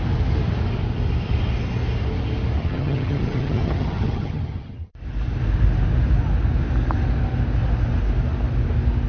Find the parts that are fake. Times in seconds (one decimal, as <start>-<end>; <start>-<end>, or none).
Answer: 2.6-4.9